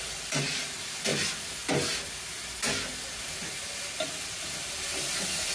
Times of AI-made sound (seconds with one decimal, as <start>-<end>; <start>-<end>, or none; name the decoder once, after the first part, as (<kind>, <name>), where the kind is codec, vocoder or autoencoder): none